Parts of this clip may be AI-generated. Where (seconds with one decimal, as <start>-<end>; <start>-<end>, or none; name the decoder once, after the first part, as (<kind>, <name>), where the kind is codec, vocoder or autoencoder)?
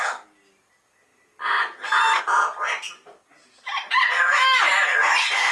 none